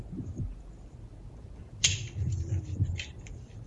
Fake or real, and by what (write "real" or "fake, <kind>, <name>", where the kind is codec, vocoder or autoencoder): real